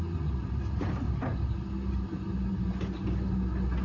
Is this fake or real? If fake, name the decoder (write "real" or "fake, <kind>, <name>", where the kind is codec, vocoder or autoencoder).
real